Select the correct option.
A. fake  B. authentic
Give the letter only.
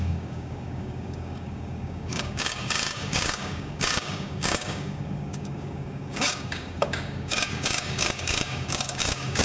A